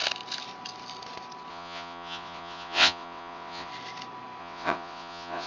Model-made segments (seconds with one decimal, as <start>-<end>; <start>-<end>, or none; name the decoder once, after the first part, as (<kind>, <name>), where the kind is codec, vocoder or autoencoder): 1.5-3.7 (vocoder, WaveNeXt); 4.4-5.5